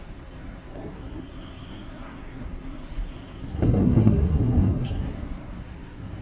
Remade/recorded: remade